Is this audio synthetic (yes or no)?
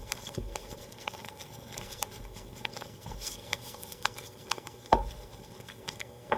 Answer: yes